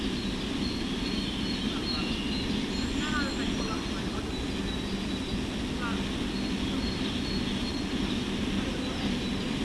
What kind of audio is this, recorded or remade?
recorded